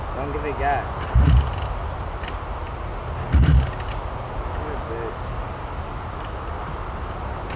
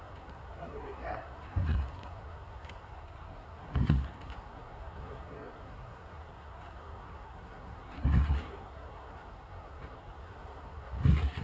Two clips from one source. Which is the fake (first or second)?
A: second